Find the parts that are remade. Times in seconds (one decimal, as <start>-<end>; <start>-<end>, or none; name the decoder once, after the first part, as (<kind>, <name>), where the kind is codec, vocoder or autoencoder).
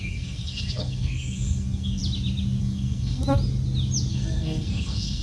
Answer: 0.0-2.0 (codec, SNAC); 2.6-3.2; 4.1-5.2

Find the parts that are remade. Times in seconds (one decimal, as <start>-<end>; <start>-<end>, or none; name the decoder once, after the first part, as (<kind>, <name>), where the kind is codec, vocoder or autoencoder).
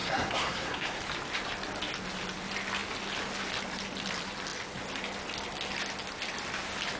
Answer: 0.0-1.0 (codec, SNAC)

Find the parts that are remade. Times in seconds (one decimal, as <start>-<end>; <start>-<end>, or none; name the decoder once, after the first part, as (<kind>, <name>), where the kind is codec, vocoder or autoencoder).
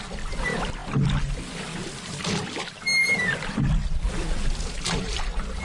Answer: none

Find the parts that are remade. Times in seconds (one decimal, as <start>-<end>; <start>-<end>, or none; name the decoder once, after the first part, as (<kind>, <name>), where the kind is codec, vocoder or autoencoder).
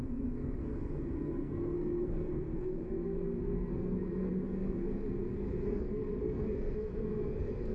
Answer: 0.0-7.7 (codec, SNAC)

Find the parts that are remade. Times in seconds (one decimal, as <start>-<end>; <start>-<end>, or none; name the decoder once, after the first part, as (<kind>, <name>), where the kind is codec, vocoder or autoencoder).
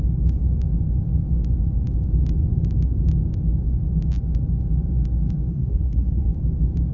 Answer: 5.5-6.3 (codec, SNAC)